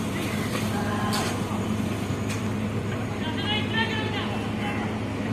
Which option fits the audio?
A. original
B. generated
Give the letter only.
A